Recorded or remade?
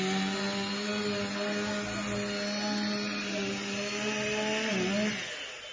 recorded